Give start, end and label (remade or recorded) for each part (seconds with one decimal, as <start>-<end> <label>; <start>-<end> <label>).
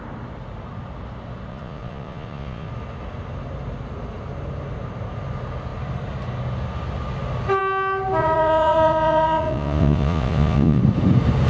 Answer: 0.0-1.5 recorded; 1.5-2.7 remade; 2.7-8.2 recorded; 8.2-10.8 remade; 10.8-11.5 recorded